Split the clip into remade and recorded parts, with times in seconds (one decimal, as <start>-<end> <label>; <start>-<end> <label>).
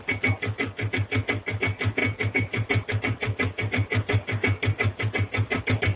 0.0-2.0 recorded; 2.0-5.6 remade; 5.6-6.0 recorded